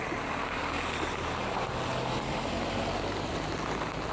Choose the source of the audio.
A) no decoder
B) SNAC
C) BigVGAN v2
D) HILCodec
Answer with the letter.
A